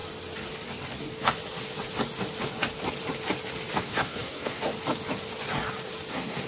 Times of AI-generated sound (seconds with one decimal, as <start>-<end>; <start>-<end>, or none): 3.8-4.7; 6.1-6.5